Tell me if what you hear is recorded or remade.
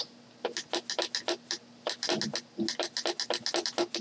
recorded